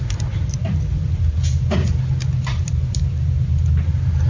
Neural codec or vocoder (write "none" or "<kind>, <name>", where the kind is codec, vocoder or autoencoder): none